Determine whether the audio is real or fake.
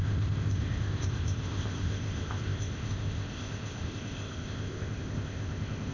fake